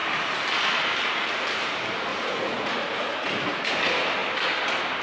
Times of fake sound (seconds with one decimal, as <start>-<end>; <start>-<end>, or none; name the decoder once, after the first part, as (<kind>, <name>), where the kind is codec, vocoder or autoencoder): 2.1-3.6 (vocoder, Vocos)